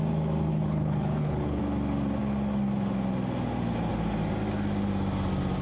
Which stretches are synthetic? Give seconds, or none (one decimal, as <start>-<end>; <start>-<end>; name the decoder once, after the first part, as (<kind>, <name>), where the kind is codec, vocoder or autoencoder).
0.5-1.6 (codec, HILCodec)